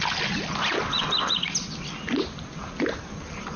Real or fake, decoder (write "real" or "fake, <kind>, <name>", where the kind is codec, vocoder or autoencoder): real